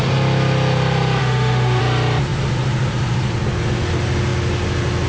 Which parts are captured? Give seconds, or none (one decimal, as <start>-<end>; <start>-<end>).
0.0-1.2; 1.8-5.1